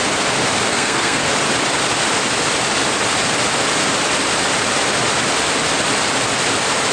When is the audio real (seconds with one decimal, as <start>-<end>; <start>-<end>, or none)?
0.0-0.7; 1.2-6.9